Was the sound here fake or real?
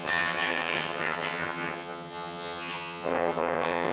fake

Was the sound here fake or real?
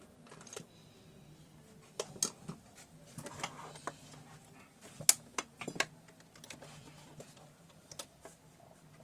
real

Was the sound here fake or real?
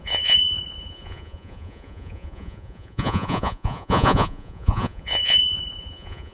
fake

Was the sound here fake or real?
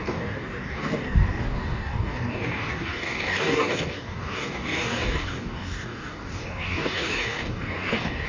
fake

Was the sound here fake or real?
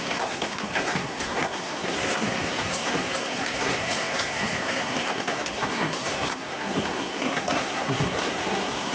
fake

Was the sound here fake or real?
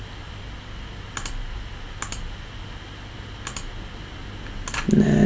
real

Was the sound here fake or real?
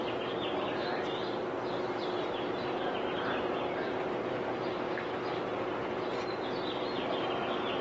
real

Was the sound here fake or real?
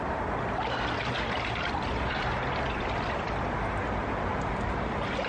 real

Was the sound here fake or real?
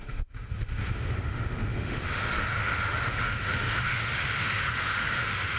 fake